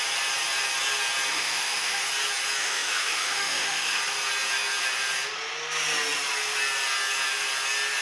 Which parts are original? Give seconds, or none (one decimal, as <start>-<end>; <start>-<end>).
0.0-1.3; 2.0-2.6; 4.0-8.0